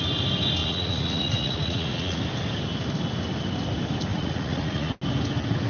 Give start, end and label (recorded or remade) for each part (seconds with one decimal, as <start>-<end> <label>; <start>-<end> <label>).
0.0-0.6 recorded; 0.6-2.2 remade; 2.2-4.1 recorded; 4.1-4.9 remade; 4.9-5.7 recorded